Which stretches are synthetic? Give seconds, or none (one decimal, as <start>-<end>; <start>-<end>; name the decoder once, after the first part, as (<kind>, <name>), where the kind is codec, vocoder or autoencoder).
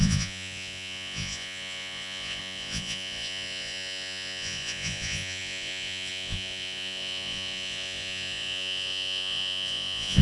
0.0-10.2 (vocoder, Vocos)